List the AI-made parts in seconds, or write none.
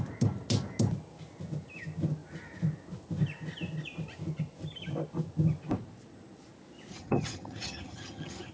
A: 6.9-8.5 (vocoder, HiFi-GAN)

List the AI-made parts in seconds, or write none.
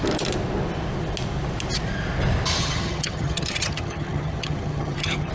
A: 2.6-5.3 (vocoder, HiFi-GAN)